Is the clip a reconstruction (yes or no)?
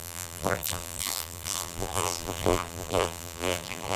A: yes